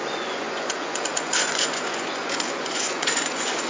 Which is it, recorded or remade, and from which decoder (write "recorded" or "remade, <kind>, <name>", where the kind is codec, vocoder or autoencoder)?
remade, vocoder, Vocos